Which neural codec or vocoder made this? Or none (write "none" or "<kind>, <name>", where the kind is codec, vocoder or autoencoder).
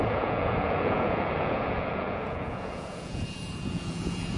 vocoder, Vocos